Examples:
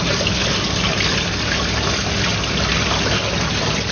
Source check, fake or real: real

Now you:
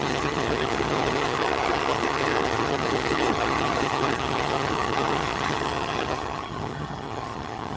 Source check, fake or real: fake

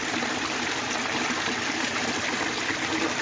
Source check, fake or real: real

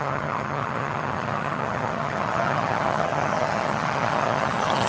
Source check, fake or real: fake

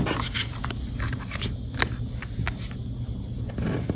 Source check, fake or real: real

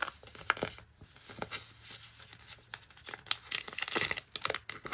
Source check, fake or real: real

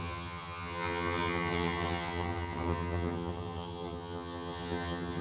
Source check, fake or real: fake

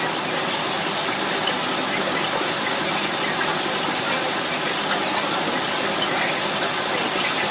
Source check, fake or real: real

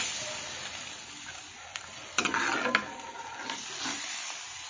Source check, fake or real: real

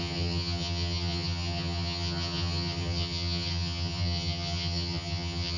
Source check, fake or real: fake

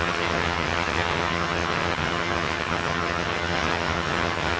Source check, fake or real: fake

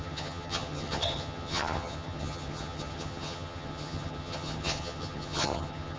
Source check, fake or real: fake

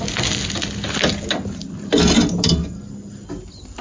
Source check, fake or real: real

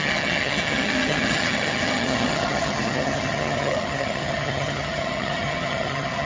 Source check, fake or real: fake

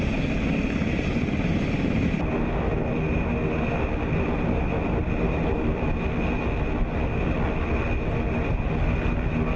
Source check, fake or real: real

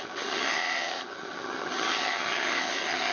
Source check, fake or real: fake